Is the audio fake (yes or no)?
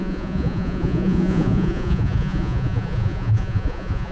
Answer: yes